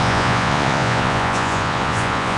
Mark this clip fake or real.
fake